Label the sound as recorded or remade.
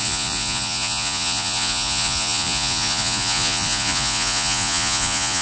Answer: remade